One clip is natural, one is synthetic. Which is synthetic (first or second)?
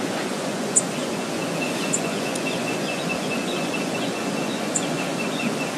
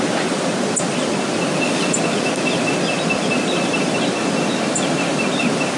first